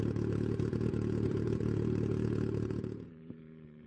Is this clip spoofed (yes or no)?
yes